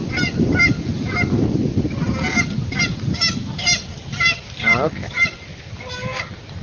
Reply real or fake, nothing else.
real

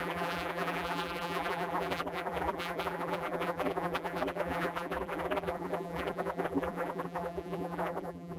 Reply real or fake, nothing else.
fake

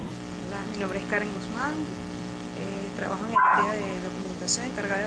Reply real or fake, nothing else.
real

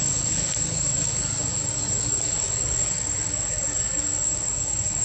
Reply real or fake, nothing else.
fake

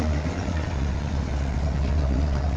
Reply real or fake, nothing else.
fake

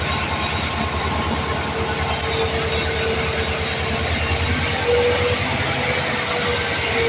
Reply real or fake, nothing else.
real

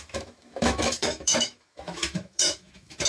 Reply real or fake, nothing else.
fake